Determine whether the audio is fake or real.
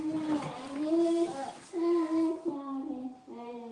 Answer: fake